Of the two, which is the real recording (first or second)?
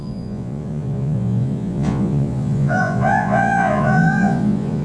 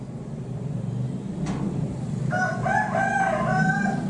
second